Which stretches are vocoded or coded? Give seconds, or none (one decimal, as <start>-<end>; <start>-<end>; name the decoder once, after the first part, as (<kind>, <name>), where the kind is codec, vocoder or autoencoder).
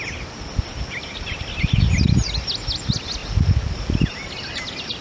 none